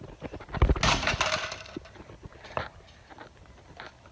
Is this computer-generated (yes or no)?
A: no